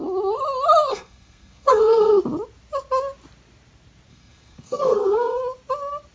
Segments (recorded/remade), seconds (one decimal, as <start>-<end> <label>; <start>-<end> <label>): 0.0-0.9 recorded; 0.9-2.2 remade; 2.2-4.1 recorded; 4.1-5.4 remade; 5.4-6.1 recorded